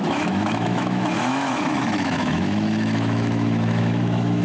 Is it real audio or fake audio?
fake